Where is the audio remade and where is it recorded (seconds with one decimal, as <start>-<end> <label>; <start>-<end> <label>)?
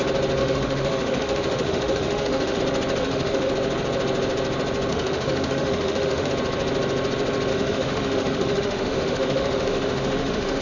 0.0-0.4 recorded; 0.4-2.6 remade; 2.6-3.0 recorded; 3.0-3.5 remade; 3.5-4.9 recorded; 4.9-6.3 remade; 6.3-7.5 recorded; 7.5-10.6 remade